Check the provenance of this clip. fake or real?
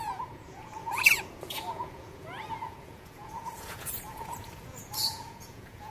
fake